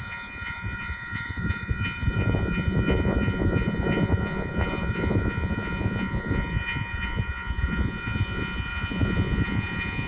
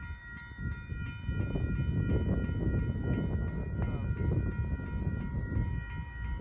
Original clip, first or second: second